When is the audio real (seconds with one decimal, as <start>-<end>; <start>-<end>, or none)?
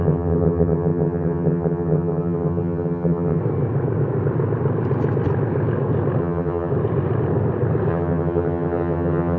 3.4-6.2; 6.7-7.9